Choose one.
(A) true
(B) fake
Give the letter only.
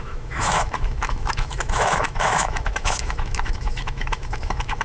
B